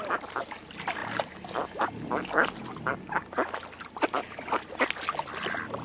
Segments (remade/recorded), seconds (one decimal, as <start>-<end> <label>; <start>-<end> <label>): 0.0-5.8 recorded